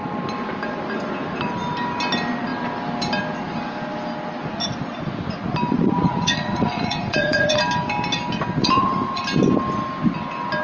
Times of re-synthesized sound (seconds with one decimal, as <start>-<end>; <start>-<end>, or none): 5.7-7.6; 8.6-9.2